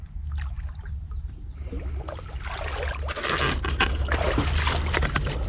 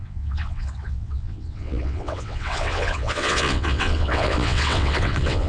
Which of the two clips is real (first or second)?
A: first